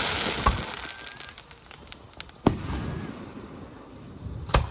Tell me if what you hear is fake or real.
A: real